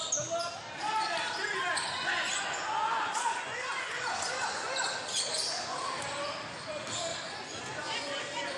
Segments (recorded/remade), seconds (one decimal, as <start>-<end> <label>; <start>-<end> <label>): 0.0-1.8 recorded; 1.8-5.8 remade; 5.8-7.1 recorded; 7.1-8.2 remade; 8.2-8.6 recorded